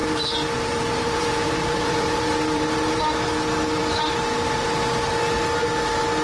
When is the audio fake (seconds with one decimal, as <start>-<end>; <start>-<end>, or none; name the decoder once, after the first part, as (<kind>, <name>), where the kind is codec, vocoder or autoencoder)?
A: 0.0-3.0 (vocoder, BigVGAN v2)

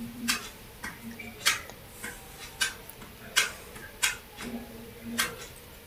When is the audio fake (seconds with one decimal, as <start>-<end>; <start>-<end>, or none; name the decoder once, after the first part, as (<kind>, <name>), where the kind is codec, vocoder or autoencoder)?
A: 0.0-0.8 (vocoder, BigVGAN v2)

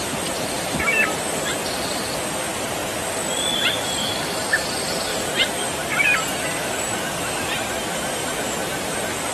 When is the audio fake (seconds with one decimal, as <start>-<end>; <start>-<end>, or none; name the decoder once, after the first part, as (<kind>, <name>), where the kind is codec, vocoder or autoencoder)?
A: 1.0-2.1 (vocoder, BigVGAN v2); 5.1-6.8; 8.2-9.3

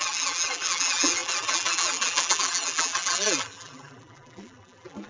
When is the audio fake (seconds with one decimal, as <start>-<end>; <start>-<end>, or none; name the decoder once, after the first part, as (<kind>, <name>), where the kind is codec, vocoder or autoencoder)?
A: 0.0-5.1 (vocoder, BigVGAN v2)

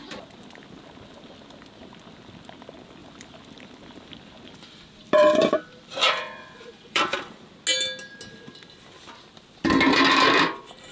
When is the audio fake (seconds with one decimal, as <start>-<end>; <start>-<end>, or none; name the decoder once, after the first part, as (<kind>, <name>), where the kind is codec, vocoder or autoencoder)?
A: 3.0-7.5 (vocoder, BigVGAN v2)

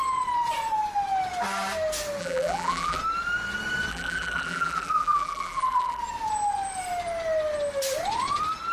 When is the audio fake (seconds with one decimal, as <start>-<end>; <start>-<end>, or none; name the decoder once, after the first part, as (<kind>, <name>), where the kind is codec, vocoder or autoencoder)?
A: 2.2-3.0 (vocoder, BigVGAN v2); 3.9-6.0

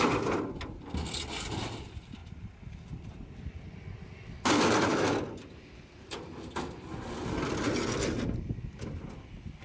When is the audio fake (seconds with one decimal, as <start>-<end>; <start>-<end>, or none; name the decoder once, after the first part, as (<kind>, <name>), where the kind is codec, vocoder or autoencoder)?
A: 2.2-2.8 (vocoder, BigVGAN v2)

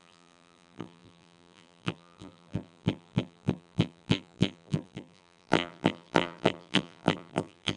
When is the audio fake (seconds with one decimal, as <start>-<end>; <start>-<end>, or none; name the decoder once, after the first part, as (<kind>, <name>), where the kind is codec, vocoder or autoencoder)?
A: 0.0-7.8 (vocoder, BigVGAN v2)